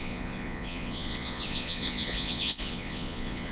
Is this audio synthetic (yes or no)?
yes